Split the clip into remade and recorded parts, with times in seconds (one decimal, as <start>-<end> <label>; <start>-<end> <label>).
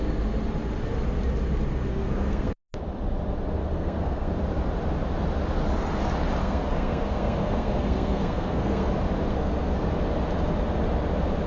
0.0-1.9 recorded; 1.9-2.5 remade; 2.5-3.6 recorded; 3.6-4.3 remade; 4.3-6.4 recorded; 6.4-8.9 remade; 8.9-9.3 recorded; 9.3-9.9 remade; 9.9-11.5 recorded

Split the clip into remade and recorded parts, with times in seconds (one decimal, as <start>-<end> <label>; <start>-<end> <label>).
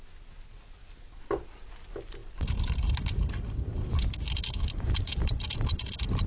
0.0-6.3 recorded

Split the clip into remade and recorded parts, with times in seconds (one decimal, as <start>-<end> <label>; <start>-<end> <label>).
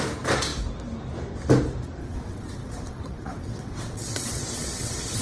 0.0-2.0 recorded; 2.0-5.2 remade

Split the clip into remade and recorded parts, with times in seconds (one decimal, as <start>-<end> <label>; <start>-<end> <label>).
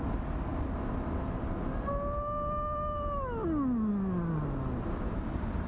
0.0-5.7 recorded